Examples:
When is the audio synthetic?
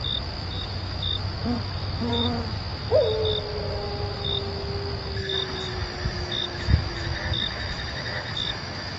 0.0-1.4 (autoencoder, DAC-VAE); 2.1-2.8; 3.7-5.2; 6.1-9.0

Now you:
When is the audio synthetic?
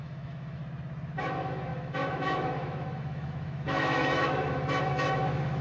0.0-0.6 (autoencoder, DAC-VAE); 1.2-5.6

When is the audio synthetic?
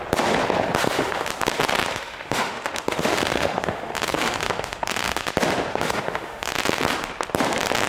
0.8-1.3 (autoencoder, DAC-VAE); 1.9-5.3; 5.7-6.5